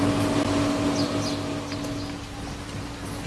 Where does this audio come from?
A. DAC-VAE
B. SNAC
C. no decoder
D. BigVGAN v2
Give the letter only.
C